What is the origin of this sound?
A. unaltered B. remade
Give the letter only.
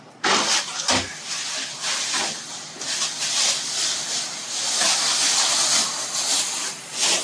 A